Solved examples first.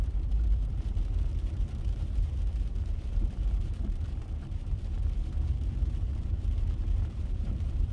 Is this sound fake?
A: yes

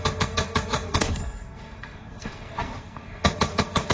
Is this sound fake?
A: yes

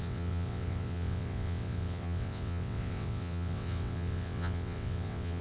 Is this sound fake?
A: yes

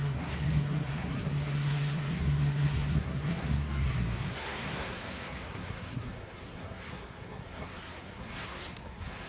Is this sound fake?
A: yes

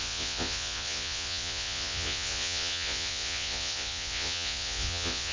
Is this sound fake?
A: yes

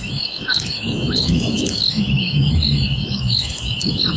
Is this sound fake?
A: yes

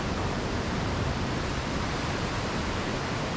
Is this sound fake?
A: yes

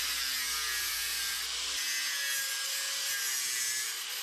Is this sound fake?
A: no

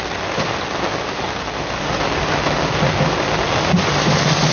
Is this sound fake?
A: no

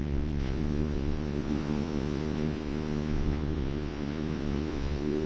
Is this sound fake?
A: yes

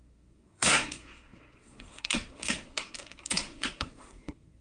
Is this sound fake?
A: yes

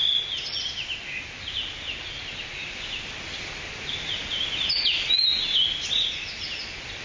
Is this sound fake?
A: no